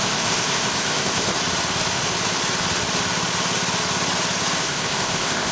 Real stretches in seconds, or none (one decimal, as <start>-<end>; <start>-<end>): 1.3-4.6

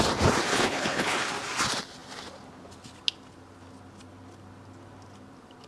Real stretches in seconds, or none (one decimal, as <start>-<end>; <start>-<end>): 0.0-0.5; 1.3-5.7